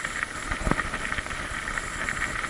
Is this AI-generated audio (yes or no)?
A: no